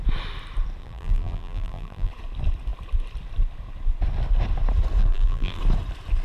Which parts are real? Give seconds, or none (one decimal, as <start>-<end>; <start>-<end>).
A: 0.0-0.8; 2.1-5.0; 5.6-6.2